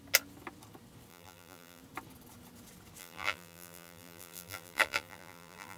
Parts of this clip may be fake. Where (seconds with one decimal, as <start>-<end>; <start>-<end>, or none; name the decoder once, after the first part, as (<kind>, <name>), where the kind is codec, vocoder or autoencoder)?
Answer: 1.1-1.8 (vocoder, BigVGAN v2); 3.0-5.8